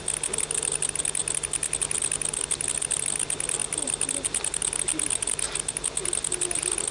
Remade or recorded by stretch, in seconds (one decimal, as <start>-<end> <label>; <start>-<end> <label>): 0.0-6.9 recorded